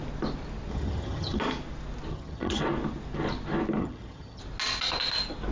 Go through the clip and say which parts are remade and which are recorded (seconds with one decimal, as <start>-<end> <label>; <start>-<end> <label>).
0.0-0.7 recorded; 0.7-1.4 remade; 1.4-2.1 recorded; 2.1-2.6 remade; 2.6-3.8 recorded; 3.8-4.4 remade; 4.4-5.5 recorded